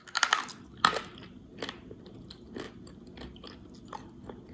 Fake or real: real